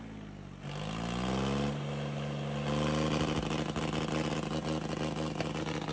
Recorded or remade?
recorded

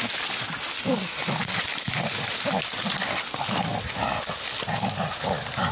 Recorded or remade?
recorded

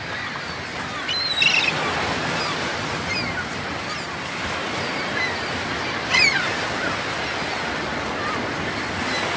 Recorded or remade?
recorded